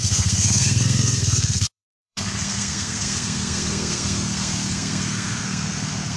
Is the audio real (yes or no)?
no